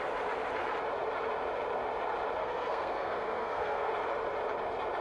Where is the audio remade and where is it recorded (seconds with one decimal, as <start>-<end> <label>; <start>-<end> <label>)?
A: 0.0-2.4 recorded; 2.4-3.9 remade; 3.9-5.0 recorded